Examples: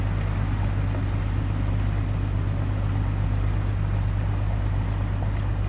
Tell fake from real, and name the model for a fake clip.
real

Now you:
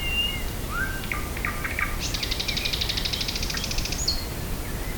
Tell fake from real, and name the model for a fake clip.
real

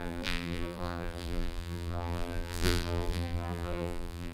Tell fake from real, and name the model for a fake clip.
fake, vocoder, BigVGAN v2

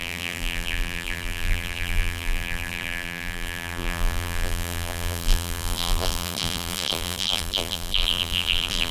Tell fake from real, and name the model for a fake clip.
fake, vocoder, BigVGAN v2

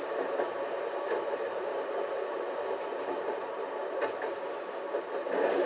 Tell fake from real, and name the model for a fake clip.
fake, vocoder, BigVGAN v2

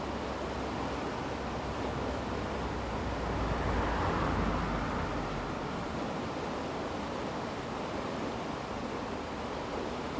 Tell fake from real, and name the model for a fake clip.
real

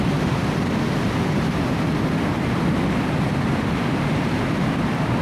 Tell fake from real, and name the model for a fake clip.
real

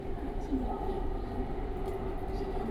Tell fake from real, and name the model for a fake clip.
fake, vocoder, BigVGAN v2